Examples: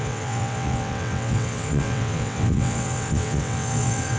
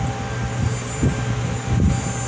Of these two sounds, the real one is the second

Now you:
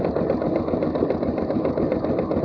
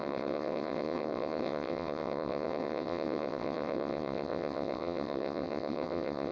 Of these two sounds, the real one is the first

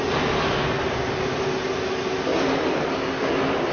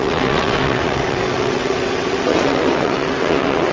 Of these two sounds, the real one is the first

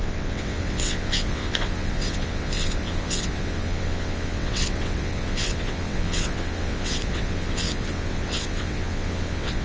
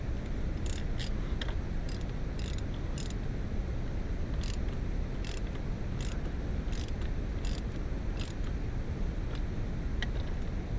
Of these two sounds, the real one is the second